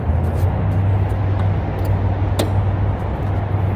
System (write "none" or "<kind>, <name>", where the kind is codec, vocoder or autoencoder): none